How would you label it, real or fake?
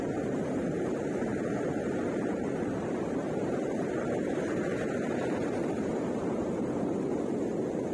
fake